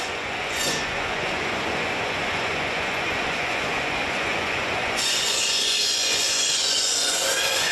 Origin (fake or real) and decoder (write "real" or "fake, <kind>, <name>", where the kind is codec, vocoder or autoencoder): fake, vocoder, Vocos